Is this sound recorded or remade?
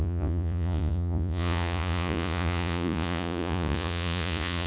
remade